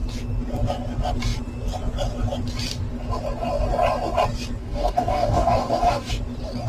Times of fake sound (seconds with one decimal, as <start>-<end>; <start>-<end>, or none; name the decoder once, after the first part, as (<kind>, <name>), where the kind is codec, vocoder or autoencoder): 4.6-6.1 (codec, DAC)